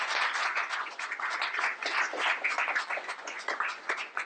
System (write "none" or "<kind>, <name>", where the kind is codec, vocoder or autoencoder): vocoder, Vocos